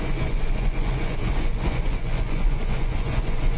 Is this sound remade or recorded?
remade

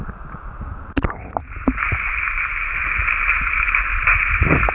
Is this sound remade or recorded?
recorded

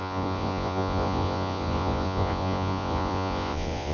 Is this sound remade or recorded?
remade